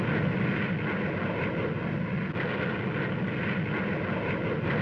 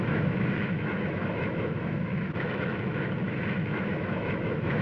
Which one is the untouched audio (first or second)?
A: first